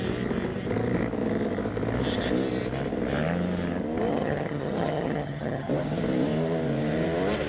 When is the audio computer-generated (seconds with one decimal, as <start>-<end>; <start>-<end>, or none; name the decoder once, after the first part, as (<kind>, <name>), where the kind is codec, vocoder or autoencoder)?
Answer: 4.1-5.7 (vocoder, HiFi-GAN)